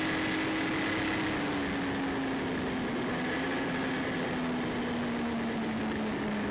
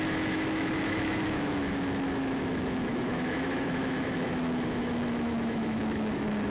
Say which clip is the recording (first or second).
first